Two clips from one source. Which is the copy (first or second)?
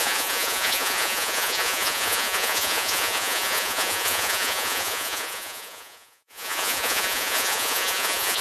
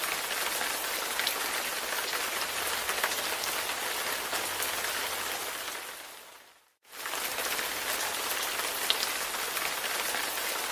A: first